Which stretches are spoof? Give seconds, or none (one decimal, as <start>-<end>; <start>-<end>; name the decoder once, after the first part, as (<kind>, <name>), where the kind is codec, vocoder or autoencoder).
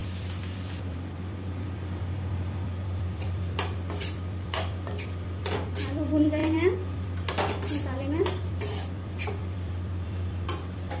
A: 0.0-11.0 (vocoder, BigVGAN v2)